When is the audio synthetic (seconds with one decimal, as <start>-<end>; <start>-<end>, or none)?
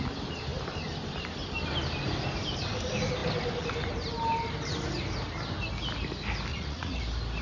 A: 6.5-7.0